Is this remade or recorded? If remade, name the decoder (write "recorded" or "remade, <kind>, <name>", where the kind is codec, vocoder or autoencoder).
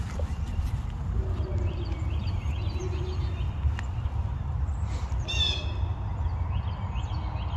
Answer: recorded